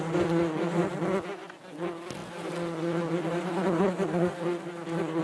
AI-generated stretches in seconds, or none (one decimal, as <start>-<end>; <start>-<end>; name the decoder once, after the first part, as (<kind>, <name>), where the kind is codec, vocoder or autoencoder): none